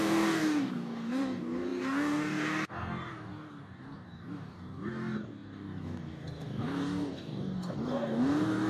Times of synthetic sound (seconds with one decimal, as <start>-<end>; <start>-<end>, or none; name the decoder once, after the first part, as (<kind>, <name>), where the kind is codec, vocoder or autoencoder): 0.0-8.7 (codec, DAC)